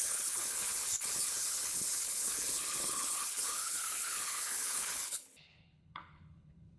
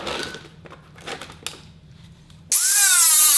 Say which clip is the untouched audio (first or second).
second